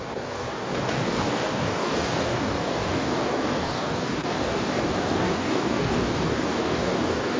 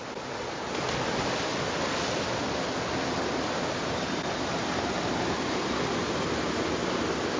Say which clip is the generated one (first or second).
first